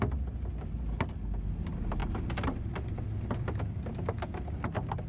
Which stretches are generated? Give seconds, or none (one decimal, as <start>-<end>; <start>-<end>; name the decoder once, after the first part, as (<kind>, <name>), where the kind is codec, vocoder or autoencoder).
none